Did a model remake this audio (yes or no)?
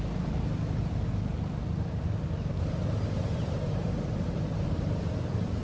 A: no